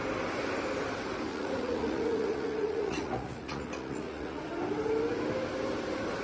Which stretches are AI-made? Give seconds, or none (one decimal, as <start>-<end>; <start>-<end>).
1.3-4.4